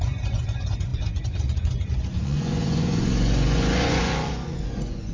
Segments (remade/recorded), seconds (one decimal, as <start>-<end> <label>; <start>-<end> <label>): 0.0-5.1 remade